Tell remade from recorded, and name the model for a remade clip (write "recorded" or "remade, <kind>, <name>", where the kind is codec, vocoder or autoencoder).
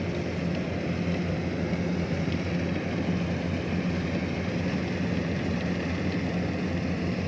recorded